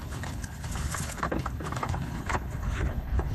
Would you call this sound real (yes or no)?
no